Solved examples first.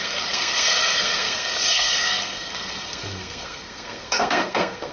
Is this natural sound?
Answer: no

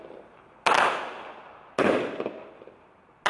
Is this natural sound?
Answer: yes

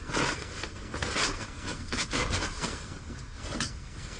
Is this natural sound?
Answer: no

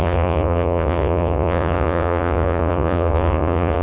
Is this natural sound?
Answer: no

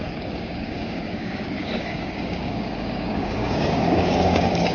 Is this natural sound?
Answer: no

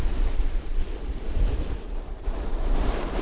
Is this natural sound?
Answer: no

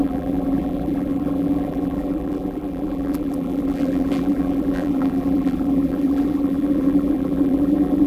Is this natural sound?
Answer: no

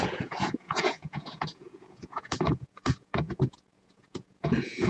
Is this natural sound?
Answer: no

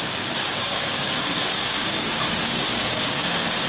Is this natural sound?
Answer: no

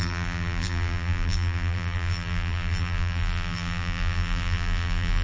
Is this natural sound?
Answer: no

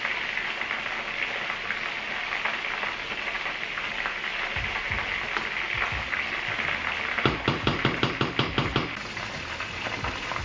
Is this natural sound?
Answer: yes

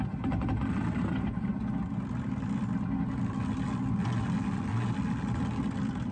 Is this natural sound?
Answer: yes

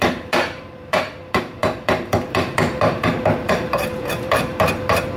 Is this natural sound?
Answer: no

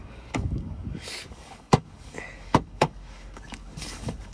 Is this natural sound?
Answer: no